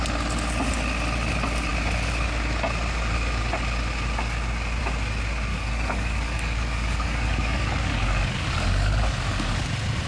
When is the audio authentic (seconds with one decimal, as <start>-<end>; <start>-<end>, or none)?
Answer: 0.0-5.5; 9.7-10.1